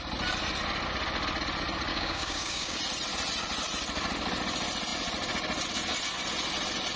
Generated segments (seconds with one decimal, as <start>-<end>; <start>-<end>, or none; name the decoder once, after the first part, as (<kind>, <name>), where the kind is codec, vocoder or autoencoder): 1.9-2.8 (codec, DAC)